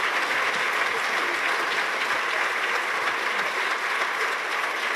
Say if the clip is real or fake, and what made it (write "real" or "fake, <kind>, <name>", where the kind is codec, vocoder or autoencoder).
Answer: real